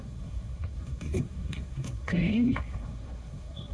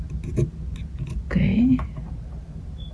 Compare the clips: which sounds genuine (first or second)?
second